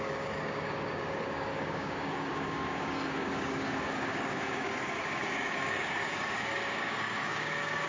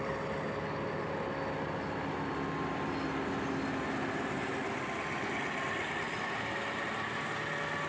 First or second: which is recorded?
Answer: second